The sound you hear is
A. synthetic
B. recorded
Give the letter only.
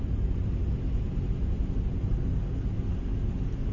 B